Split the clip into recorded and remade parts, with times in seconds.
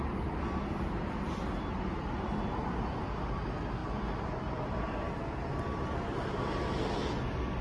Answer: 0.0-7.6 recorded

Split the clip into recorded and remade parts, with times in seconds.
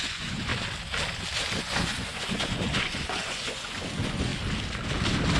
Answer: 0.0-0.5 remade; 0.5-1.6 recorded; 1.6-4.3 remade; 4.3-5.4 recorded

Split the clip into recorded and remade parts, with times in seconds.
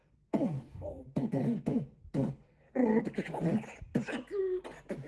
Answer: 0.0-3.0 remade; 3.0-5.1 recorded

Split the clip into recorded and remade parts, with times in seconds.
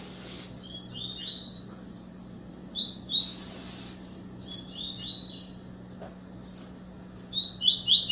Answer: 0.0-1.3 recorded; 1.3-2.5 remade; 2.5-8.1 recorded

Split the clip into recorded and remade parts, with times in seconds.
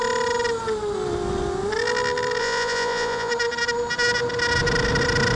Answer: 0.0-2.4 recorded; 2.4-3.3 remade; 3.3-5.4 recorded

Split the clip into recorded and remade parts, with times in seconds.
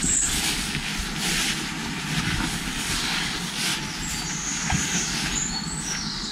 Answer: 0.0-0.9 remade; 0.9-2.2 recorded; 2.2-3.7 remade; 3.7-4.3 recorded; 4.3-5.2 remade; 5.2-5.8 recorded; 5.8-6.3 remade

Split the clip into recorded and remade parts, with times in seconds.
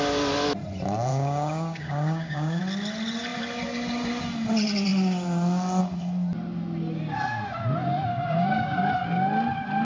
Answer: 0.0-1.1 recorded; 1.1-2.6 remade; 2.6-8.1 recorded; 8.1-8.8 remade; 8.8-9.8 recorded